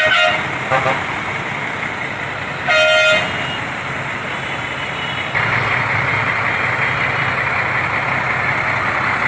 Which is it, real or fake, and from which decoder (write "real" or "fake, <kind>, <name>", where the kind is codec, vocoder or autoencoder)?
real